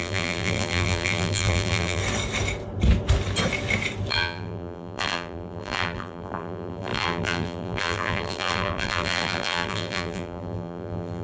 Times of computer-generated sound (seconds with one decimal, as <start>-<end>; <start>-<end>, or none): 0.0-2.0; 4.1-11.2